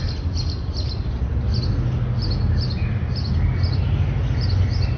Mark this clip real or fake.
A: real